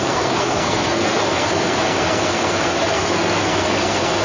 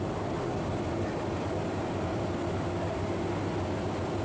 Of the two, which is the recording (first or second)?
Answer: second